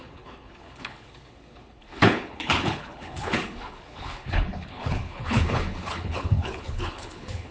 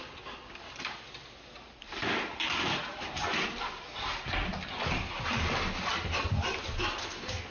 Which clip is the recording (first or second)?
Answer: second